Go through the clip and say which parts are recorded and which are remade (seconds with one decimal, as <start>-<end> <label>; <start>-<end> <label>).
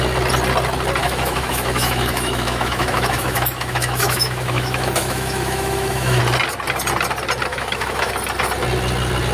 0.0-1.0 recorded; 1.0-6.2 remade; 6.2-7.5 recorded; 7.5-8.1 remade; 8.1-9.3 recorded